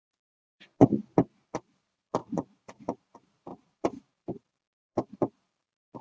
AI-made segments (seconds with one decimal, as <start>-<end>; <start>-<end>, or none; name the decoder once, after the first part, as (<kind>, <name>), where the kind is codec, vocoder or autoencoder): 0.0-1.0 (vocoder, BigVGAN v2); 1.6-6.0